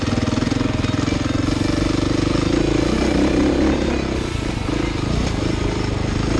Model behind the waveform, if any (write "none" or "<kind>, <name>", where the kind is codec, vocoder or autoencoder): none